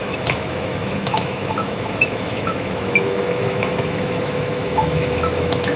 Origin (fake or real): fake